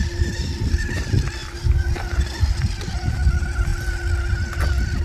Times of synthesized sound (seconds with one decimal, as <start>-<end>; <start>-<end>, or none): none